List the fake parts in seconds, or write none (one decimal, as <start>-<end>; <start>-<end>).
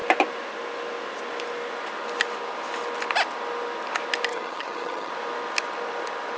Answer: 4.3-5.1